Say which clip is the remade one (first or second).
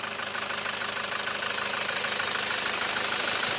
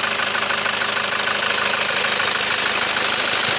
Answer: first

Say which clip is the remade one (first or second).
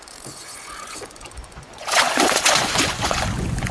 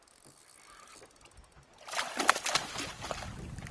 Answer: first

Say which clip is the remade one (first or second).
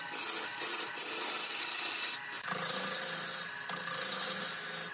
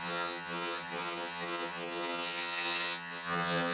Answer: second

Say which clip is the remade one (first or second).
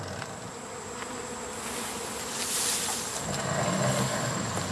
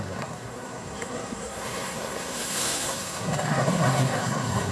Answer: second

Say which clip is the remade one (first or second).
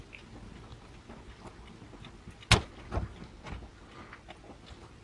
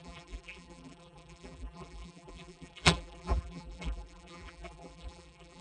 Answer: second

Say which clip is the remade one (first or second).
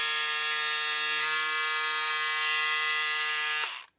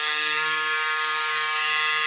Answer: second